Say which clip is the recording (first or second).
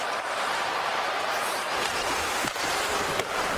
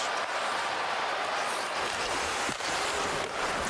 second